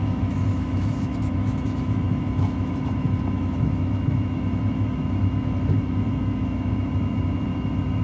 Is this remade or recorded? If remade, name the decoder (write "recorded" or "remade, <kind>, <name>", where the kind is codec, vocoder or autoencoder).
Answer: remade, autoencoder, DAC-VAE